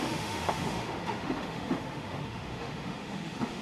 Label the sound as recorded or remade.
remade